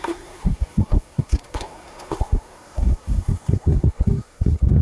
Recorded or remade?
remade